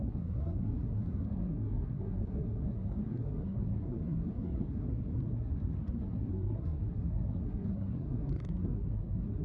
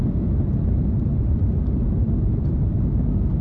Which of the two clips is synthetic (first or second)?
first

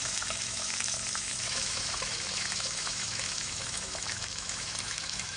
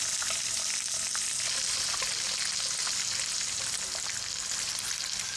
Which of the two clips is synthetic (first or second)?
first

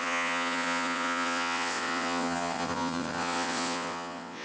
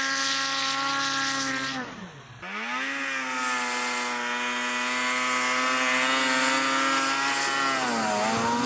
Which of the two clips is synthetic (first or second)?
first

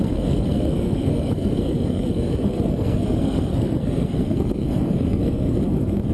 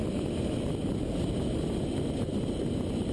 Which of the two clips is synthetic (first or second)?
first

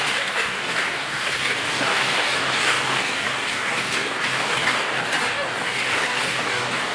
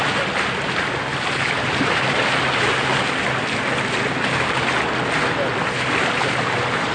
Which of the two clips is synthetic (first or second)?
first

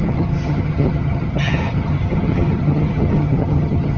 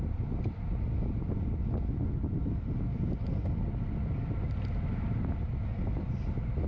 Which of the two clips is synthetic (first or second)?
first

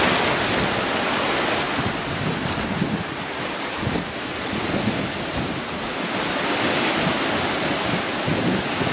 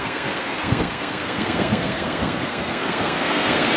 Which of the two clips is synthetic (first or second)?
second